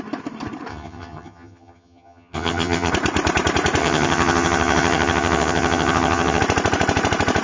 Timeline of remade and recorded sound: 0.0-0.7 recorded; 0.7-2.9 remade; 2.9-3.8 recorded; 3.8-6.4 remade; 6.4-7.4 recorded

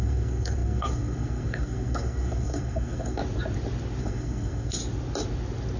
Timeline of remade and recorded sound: 0.0-3.2 remade; 3.2-4.0 recorded; 4.0-4.8 remade; 4.8-5.8 recorded